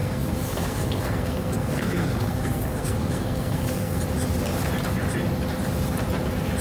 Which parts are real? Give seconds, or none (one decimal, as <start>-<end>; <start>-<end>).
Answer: 4.0-6.6